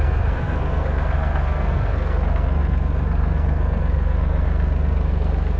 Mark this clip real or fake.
fake